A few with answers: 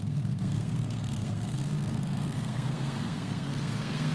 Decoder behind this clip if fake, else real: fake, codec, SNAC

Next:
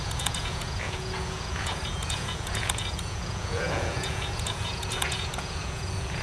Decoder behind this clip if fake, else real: fake, vocoder, Vocos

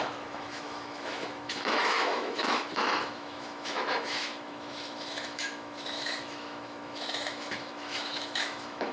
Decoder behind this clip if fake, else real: fake, autoencoder, DAC-VAE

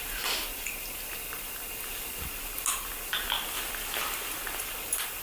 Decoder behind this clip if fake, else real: real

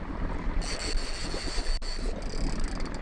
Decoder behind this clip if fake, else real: real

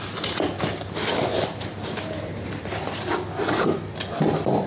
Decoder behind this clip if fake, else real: real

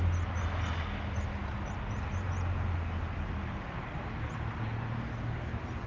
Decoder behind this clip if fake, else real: real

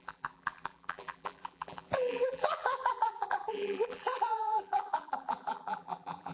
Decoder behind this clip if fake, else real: fake, vocoder, BigVGAN v2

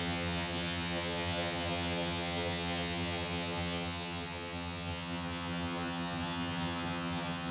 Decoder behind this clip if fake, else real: fake, vocoder, HiFi-GAN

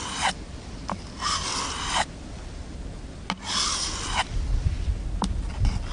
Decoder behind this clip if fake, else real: real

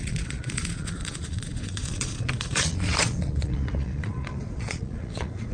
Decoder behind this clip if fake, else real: fake, vocoder, Vocos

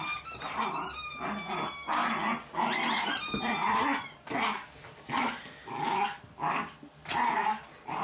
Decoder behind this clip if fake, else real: real